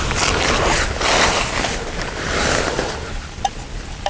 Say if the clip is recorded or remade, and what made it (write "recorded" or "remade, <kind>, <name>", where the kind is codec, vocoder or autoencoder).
recorded